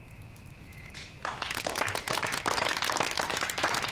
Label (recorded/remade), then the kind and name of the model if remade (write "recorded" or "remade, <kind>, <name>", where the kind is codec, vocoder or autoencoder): remade, autoencoder, DAC-VAE